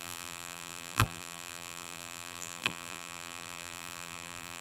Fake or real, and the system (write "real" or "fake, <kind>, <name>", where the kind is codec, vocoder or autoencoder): fake, vocoder, BigVGAN v2